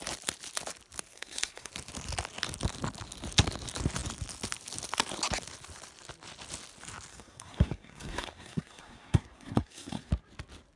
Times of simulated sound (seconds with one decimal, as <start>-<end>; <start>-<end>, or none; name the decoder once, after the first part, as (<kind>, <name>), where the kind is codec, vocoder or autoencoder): 1.1-1.7 (codec, SNAC); 7.1-10.1